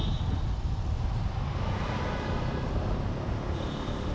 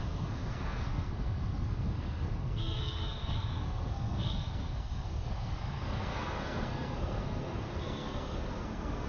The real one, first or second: first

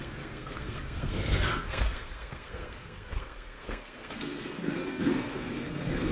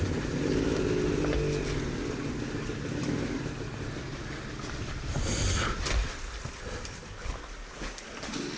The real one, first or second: second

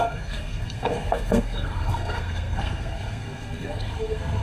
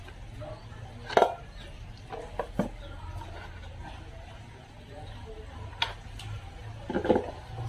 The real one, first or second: second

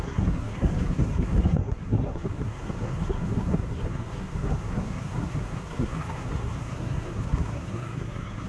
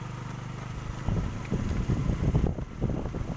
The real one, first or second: second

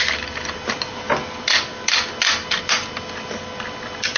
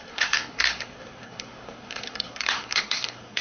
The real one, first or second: first